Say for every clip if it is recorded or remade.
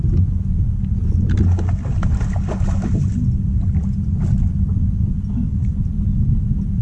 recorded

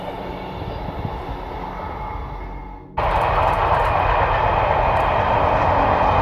recorded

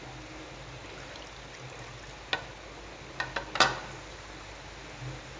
recorded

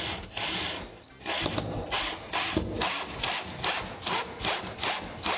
recorded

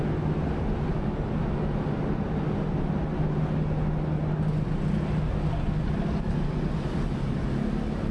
recorded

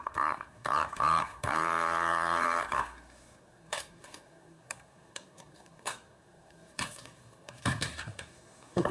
remade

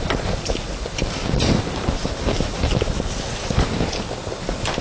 recorded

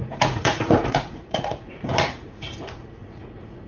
remade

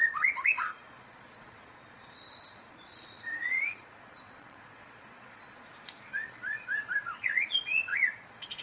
remade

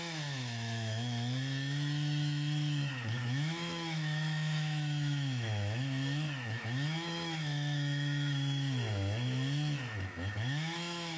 remade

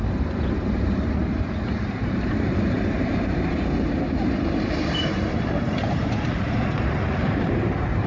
remade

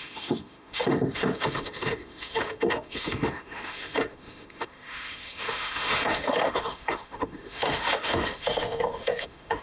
remade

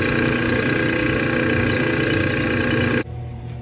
recorded